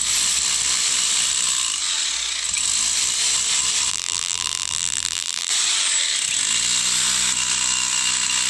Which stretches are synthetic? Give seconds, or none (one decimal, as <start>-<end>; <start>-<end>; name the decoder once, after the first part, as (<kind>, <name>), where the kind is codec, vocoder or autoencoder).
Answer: 3.9-5.5 (vocoder, BigVGAN v2)

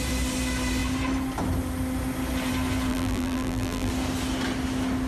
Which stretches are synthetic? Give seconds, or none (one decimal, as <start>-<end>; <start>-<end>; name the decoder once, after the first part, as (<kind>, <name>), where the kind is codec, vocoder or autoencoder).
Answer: 2.9-3.9 (vocoder, BigVGAN v2)

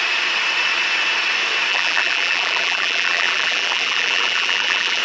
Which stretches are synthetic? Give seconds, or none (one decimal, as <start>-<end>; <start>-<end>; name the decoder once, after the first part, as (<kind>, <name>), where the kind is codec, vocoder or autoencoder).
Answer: 1.7-5.0 (vocoder, BigVGAN v2)

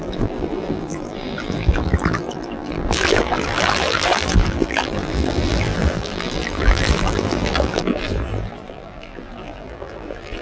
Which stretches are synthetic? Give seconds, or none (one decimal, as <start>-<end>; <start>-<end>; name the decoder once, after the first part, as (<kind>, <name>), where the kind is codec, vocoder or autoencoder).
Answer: 0.0-10.4 (vocoder, BigVGAN v2)

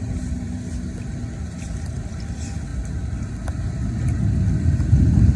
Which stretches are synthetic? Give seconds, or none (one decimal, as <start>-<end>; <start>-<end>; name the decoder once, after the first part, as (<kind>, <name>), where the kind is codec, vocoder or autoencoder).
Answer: none

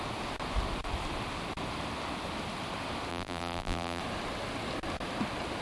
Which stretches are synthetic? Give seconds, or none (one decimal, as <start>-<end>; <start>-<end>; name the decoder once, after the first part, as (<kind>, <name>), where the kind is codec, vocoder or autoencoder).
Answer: 3.1-4.0 (vocoder, BigVGAN v2)